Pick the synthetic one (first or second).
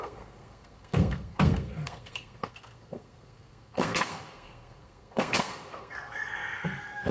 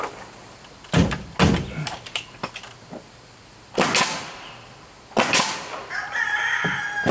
first